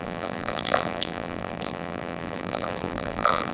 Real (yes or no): no